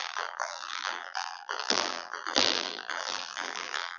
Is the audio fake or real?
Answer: fake